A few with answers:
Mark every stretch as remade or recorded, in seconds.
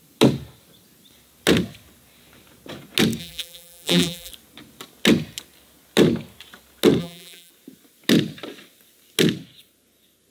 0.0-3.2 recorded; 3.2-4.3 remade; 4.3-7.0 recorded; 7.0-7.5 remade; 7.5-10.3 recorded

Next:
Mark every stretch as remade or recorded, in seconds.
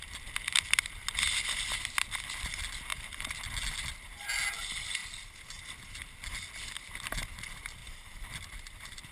0.0-7.8 recorded; 7.8-9.1 remade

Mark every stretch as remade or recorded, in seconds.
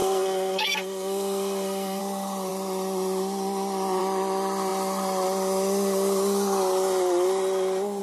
0.0-2.0 remade; 2.0-8.0 recorded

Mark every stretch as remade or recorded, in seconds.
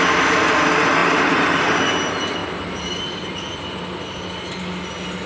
0.0-5.3 recorded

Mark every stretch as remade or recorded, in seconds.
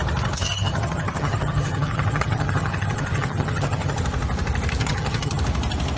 0.0-0.4 recorded; 0.4-4.0 remade; 4.0-4.8 recorded; 4.8-5.4 remade; 5.4-6.0 recorded